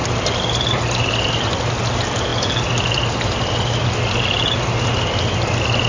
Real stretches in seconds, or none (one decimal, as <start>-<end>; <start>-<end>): 0.0-5.9